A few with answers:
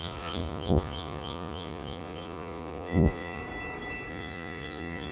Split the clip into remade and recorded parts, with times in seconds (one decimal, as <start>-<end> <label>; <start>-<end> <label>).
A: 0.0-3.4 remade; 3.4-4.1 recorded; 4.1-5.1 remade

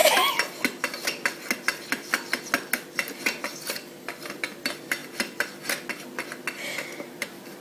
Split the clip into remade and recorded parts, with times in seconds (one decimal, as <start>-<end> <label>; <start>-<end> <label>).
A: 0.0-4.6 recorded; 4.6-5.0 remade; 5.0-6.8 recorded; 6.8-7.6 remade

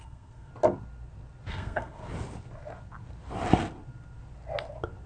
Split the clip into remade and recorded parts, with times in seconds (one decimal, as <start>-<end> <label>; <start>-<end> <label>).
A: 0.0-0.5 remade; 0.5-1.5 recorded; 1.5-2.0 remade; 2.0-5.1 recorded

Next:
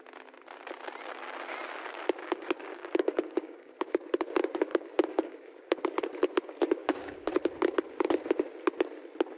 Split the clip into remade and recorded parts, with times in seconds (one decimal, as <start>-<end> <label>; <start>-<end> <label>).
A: 0.0-2.2 recorded; 2.2-3.9 remade; 3.9-4.7 recorded; 4.7-5.8 remade; 5.8-6.8 recorded; 6.8-7.3 remade; 7.3-9.4 recorded

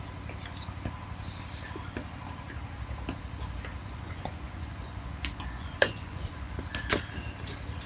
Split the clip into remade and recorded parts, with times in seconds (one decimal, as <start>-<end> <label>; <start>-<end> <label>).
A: 0.0-3.8 recorded; 3.8-6.5 remade; 6.5-7.9 recorded

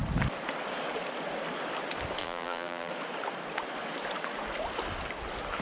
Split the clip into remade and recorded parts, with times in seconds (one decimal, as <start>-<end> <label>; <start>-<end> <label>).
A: 0.0-2.2 recorded; 2.2-2.9 remade; 2.9-5.6 recorded

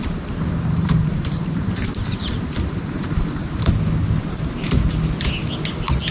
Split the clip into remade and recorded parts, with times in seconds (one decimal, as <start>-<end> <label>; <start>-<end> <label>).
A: 0.0-3.7 remade; 3.7-6.1 recorded

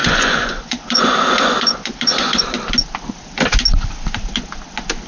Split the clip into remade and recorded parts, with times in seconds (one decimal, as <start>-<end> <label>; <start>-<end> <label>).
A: 0.0-2.4 remade; 2.4-5.1 recorded